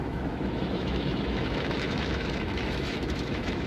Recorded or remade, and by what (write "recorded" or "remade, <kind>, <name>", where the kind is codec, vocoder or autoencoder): remade, autoencoder, DAC-VAE